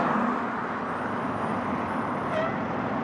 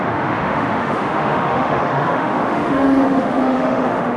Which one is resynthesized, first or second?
second